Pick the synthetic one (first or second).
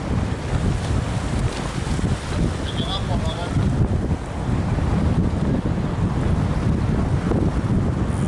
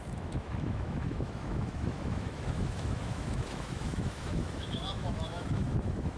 second